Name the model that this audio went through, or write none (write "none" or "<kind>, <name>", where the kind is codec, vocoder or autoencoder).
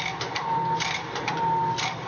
none